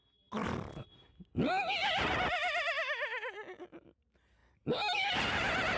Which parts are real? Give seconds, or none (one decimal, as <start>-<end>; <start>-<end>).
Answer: 0.0-1.8; 2.7-4.4